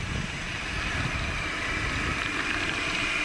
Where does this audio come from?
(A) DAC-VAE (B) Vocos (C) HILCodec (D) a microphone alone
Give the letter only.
D